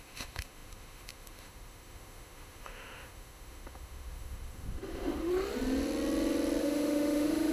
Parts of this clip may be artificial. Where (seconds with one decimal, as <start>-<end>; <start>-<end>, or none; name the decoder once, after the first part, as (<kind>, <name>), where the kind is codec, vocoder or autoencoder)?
0.0-5.3 (autoencoder, DAC-VAE); 6.6-7.5